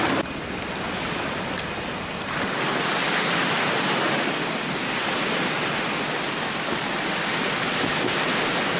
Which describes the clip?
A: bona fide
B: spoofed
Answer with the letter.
A